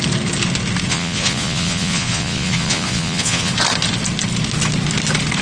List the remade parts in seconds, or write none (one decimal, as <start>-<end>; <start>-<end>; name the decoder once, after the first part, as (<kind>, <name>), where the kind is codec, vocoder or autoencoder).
0.9-3.5 (vocoder, Vocos)